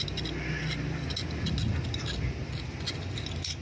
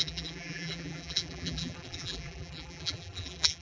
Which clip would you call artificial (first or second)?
second